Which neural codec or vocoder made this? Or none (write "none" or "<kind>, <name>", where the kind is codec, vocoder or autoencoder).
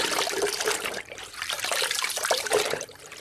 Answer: vocoder, BigVGAN v2